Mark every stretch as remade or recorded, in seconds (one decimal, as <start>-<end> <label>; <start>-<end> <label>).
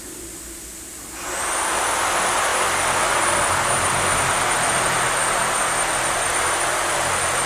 0.0-7.5 recorded